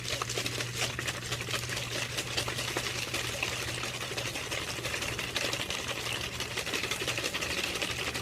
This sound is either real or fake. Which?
real